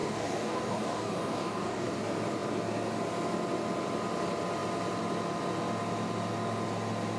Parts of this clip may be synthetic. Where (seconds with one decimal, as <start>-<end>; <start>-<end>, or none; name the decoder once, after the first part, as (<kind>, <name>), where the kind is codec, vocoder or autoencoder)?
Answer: 0.0-2.0 (codec, DAC)

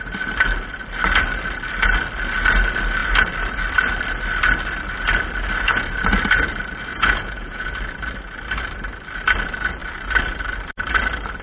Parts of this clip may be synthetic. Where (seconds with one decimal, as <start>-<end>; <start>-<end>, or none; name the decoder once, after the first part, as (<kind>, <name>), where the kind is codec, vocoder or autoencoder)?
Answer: 6.9-7.7 (vocoder, Vocos)